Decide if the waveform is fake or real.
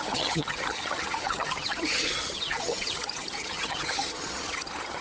fake